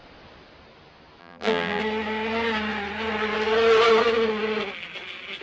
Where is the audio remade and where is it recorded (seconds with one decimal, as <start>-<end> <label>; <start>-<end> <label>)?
0.0-1.2 recorded; 1.2-1.8 remade; 1.8-5.4 recorded